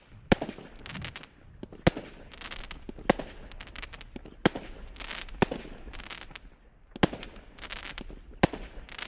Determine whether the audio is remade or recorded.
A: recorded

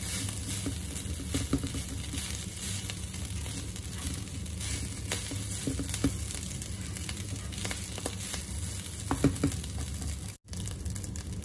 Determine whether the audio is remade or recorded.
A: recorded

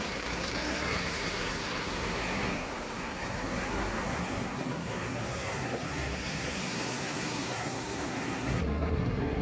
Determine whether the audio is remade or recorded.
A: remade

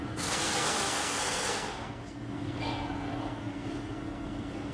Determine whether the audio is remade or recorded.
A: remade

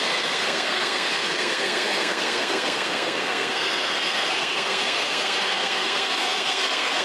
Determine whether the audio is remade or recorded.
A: remade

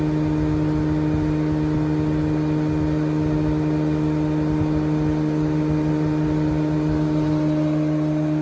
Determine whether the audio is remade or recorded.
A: recorded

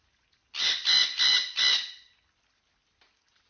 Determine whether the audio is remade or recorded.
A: recorded